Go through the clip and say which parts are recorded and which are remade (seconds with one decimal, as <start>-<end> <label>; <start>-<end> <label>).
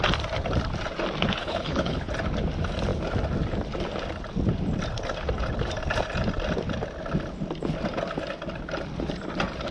0.0-1.4 recorded; 1.4-2.1 remade; 2.1-9.7 recorded